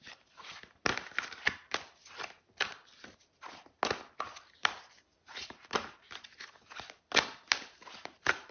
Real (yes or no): yes